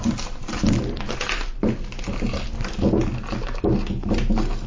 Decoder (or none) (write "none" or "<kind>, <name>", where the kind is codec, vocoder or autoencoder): none